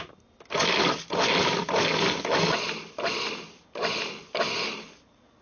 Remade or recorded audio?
recorded